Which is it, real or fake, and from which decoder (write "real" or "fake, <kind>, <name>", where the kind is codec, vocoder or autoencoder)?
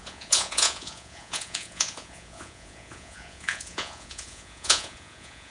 fake, vocoder, Vocos